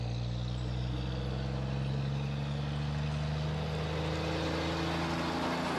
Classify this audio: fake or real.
real